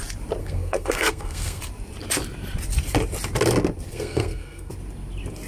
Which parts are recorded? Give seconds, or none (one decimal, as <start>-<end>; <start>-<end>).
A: 0.0-0.4; 1.6-3.9; 4.7-5.5